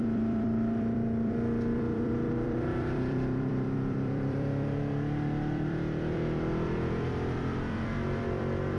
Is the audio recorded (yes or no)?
no